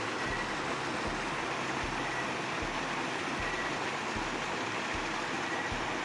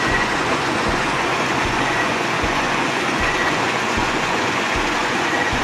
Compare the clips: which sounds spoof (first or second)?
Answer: second